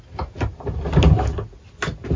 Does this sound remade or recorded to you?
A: recorded